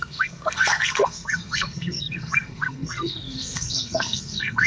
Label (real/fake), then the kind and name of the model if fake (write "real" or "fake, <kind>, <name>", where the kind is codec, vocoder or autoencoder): fake, codec, SNAC